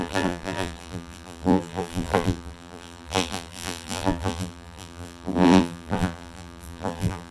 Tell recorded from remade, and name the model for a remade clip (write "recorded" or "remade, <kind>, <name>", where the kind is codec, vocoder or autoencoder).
remade, vocoder, BigVGAN v2